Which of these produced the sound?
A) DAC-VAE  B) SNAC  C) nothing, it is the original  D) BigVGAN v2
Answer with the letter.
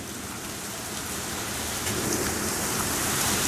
C